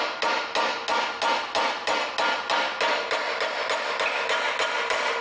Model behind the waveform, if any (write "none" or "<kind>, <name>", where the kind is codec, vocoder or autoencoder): none